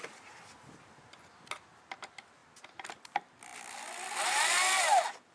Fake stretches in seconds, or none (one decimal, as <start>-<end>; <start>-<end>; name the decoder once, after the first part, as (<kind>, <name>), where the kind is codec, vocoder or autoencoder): none